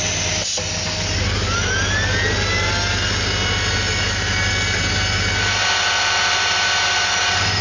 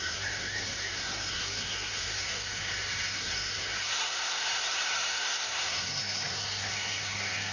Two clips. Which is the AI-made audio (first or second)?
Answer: second